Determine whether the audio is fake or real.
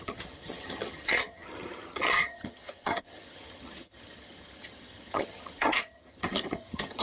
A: fake